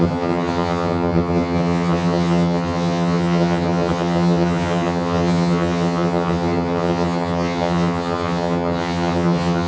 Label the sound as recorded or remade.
remade